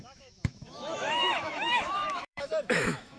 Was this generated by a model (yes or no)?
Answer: yes